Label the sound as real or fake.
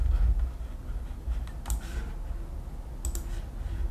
real